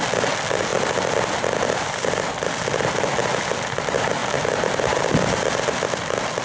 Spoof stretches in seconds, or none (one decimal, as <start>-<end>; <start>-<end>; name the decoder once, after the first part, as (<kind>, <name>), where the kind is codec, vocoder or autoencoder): none